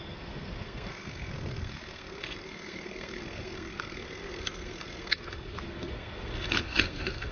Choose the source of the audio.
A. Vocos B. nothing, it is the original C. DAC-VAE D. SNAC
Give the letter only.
D